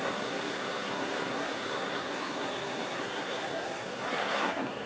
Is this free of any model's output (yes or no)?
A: no